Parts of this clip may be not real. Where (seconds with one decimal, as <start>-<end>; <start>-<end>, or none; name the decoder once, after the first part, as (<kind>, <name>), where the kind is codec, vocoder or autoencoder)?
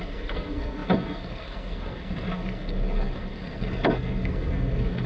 0.0-5.1 (codec, SNAC)